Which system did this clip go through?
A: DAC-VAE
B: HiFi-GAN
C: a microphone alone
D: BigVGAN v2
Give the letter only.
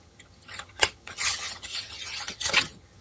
B